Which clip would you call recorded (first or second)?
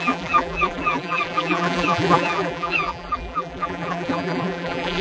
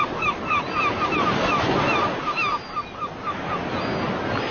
second